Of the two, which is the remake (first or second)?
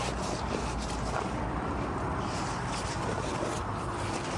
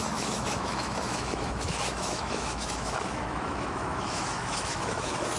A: second